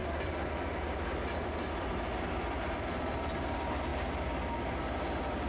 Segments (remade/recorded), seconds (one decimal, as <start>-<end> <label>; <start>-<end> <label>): 0.0-5.5 recorded